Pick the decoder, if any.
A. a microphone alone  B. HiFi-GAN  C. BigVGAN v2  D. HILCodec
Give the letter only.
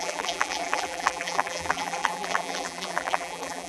C